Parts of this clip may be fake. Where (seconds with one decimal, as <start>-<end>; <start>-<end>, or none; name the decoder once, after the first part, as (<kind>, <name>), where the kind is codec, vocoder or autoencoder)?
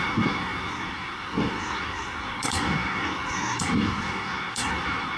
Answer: 0.0-5.2 (codec, SNAC)